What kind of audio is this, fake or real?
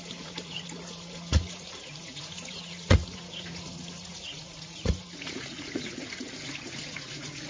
fake